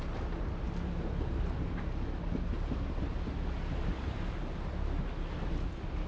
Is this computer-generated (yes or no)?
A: no